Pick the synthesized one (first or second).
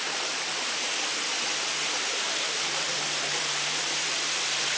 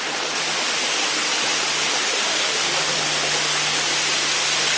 first